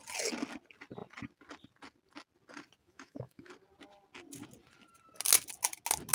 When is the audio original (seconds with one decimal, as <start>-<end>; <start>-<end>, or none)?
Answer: 0.0-2.8; 3.5-6.1